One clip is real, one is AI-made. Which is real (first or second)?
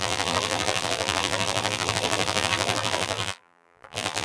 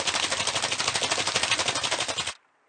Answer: second